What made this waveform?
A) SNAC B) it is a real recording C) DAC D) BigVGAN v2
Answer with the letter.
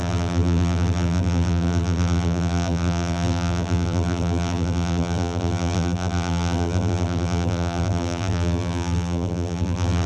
D